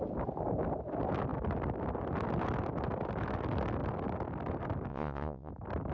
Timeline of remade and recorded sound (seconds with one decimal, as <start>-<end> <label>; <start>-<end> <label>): 0.0-4.9 recorded; 4.9-5.5 remade; 5.5-5.9 recorded